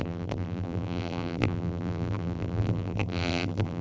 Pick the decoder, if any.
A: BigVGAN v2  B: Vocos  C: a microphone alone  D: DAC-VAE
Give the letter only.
A